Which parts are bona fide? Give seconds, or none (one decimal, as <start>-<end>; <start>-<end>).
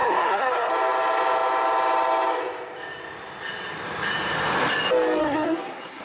0.7-5.2